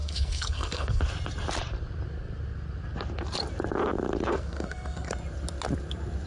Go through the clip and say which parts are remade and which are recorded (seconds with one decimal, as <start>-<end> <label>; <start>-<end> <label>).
0.0-1.0 remade; 1.0-4.3 recorded; 4.3-5.1 remade; 5.1-6.3 recorded